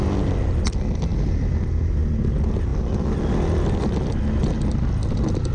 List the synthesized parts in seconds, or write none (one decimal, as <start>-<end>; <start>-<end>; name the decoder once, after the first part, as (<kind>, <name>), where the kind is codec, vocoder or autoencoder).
none